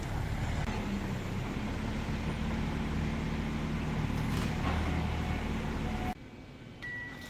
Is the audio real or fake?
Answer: real